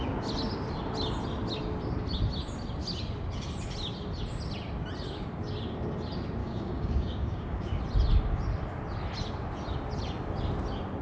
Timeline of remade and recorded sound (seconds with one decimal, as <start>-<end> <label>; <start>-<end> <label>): 0.0-6.4 recorded; 6.4-7.8 remade; 7.8-11.0 recorded

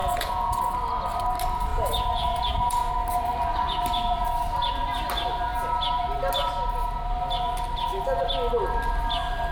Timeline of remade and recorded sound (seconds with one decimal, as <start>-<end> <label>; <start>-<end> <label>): 0.0-0.6 remade; 0.6-1.7 recorded; 1.7-2.9 remade; 2.9-9.5 recorded

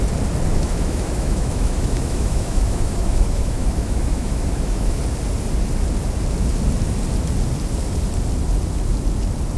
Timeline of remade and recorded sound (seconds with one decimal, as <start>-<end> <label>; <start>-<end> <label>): 0.0-0.5 recorded; 0.5-5.0 remade; 5.0-9.6 recorded